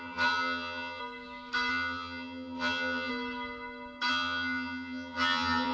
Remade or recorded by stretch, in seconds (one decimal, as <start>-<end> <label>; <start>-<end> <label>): 0.0-1.0 remade; 1.0-1.7 recorded; 1.7-3.1 remade; 3.1-4.1 recorded; 4.1-5.7 remade